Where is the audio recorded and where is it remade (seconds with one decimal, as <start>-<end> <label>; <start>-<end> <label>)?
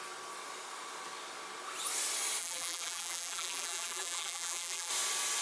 0.0-2.4 recorded; 2.4-4.9 remade; 4.9-5.4 recorded